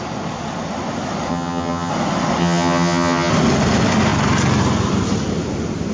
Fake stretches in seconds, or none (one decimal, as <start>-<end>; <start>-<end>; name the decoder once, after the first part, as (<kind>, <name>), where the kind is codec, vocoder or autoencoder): 1.3-1.9 (vocoder, HiFi-GAN); 2.4-3.3